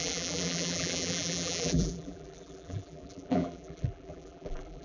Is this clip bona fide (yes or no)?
no